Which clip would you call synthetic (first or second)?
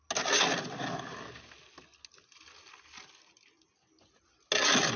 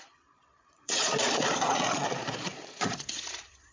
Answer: second